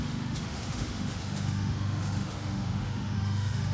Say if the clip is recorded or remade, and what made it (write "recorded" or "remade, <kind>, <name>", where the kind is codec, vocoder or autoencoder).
remade, autoencoder, DAC-VAE